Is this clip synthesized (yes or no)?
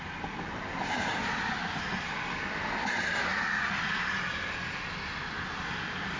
yes